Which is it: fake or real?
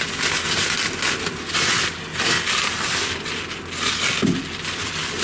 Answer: real